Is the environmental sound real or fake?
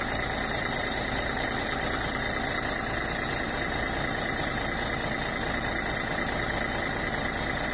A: real